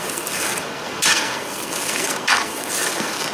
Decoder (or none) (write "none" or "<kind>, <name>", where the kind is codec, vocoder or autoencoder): codec, SNAC